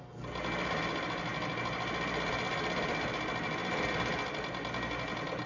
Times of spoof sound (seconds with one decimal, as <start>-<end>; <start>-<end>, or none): none